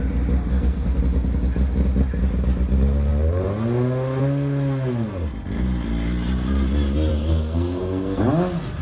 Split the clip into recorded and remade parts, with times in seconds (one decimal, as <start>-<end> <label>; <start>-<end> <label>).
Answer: 0.0-0.5 recorded; 0.5-1.0 remade; 1.0-7.1 recorded; 7.1-8.2 remade; 8.2-8.8 recorded